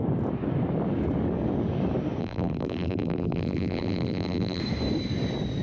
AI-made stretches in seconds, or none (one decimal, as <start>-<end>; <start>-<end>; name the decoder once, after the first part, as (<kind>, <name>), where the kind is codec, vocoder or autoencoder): 2.2-4.6 (vocoder, BigVGAN v2)